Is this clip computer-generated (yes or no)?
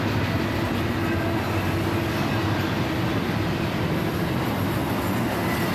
no